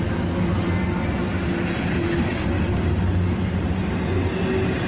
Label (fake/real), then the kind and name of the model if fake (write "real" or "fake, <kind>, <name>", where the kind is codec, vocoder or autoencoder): real